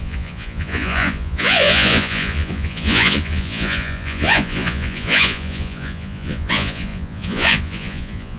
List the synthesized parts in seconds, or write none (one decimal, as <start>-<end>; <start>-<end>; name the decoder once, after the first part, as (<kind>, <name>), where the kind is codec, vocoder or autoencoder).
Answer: 0.0-8.4 (vocoder, Vocos)